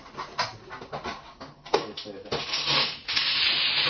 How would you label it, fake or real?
real